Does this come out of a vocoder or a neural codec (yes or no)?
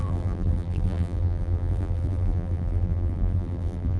yes